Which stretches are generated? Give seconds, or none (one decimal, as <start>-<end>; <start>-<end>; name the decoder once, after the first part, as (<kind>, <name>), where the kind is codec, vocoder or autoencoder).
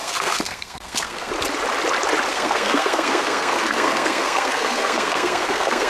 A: 0.0-1.3 (codec, SNAC); 2.3-5.9